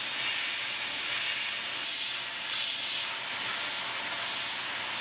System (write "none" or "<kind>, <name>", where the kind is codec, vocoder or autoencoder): none